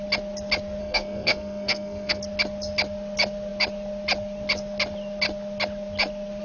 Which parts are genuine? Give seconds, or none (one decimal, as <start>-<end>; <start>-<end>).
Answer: 0.0-0.8; 2.2-6.4